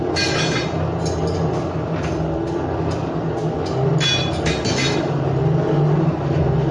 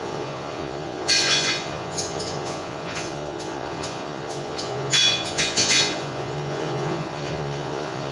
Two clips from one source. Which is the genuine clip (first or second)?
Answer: first